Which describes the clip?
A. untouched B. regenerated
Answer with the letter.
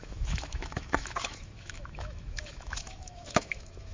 B